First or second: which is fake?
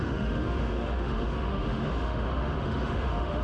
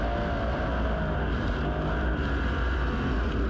first